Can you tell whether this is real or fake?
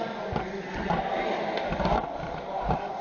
real